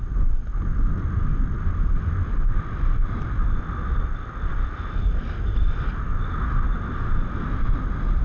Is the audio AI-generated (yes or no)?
no